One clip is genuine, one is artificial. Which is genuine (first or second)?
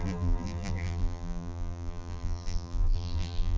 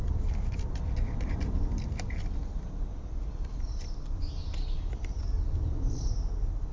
second